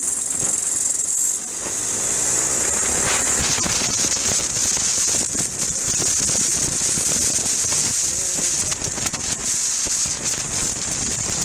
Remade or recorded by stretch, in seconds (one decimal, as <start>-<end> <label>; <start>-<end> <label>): 0.0-7.9 recorded; 7.9-8.6 remade; 8.6-9.4 recorded; 9.4-11.4 remade